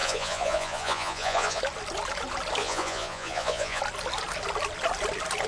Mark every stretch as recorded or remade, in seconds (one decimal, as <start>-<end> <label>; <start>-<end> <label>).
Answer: 0.0-1.6 remade; 1.6-2.6 recorded; 2.6-3.8 remade; 3.8-5.5 recorded